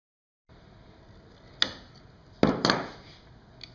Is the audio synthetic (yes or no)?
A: no